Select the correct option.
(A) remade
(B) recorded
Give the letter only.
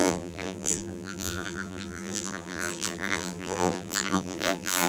A